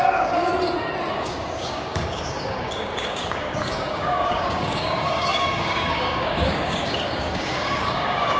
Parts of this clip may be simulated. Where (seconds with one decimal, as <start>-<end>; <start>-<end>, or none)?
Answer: 0.0-0.5; 1.1-8.4